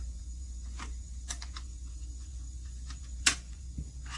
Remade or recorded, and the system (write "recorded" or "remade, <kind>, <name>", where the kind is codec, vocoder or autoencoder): remade, vocoder, Vocos